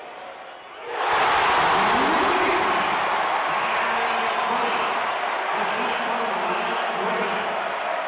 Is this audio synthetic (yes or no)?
no